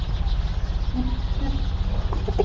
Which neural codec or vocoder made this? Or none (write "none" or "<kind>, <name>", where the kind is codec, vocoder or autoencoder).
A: none